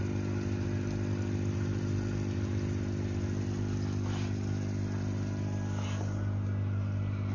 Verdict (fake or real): real